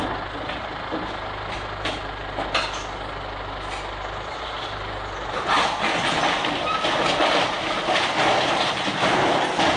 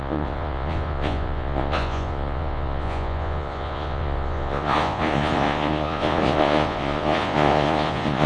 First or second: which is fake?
second